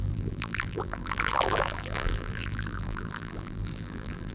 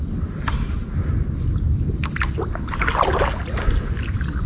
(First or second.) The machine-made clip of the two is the first